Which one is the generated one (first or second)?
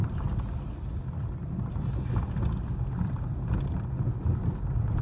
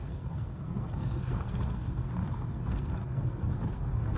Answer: second